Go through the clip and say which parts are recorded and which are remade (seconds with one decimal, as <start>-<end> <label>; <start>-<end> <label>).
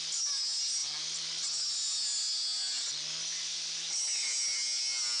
0.0-5.2 recorded